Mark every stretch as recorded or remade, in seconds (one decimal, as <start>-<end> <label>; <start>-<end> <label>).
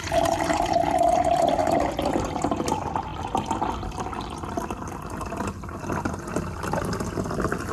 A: 0.0-3.1 remade; 3.1-7.7 recorded